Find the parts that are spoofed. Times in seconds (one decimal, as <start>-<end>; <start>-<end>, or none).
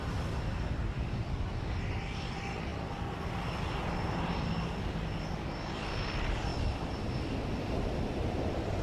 none